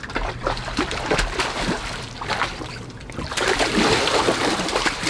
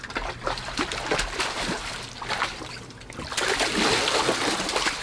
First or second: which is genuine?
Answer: second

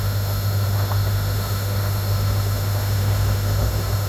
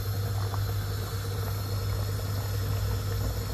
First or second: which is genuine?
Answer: second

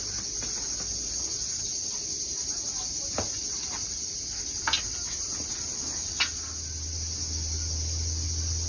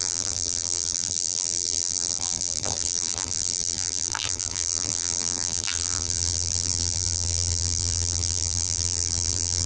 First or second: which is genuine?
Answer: first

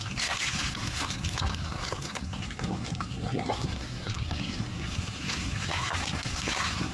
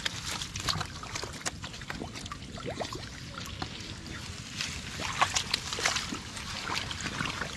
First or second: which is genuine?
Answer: second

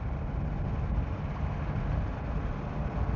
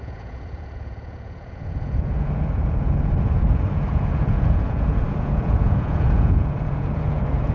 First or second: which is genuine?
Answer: first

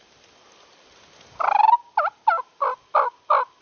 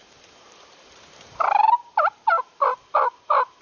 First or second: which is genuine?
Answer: first